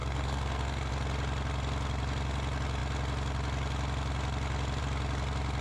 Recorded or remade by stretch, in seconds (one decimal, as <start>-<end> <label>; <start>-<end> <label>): 0.0-0.9 remade; 0.9-5.6 recorded